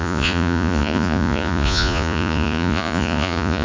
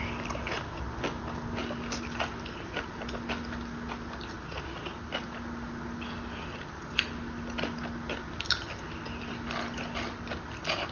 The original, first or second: second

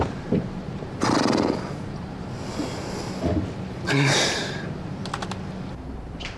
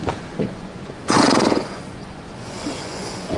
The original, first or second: first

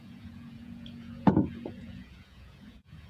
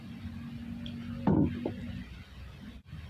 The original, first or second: second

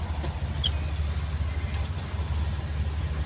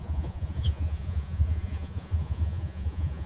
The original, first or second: first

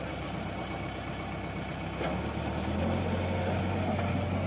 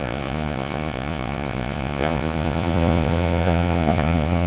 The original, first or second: first